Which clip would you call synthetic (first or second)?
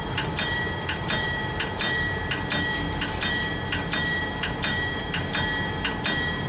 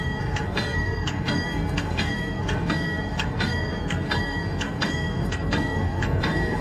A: second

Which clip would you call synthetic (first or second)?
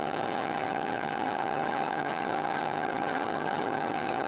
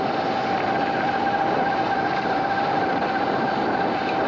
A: first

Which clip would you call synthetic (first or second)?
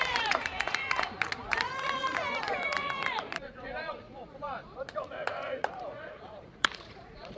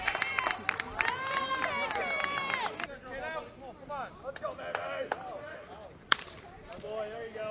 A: first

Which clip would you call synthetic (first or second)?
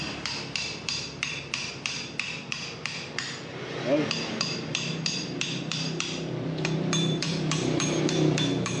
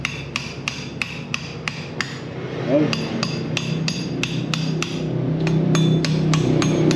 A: first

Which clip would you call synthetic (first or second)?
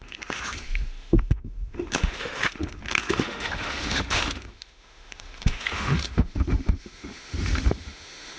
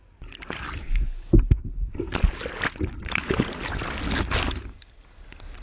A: first